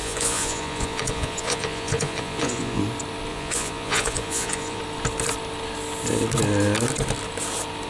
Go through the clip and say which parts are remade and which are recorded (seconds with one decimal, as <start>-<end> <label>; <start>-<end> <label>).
0.0-2.8 remade; 2.8-3.3 recorded; 3.3-4.8 remade; 4.8-7.9 recorded